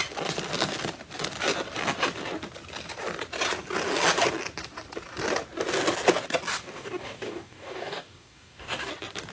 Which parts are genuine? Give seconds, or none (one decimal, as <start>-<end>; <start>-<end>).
0.0-6.5; 8.9-9.3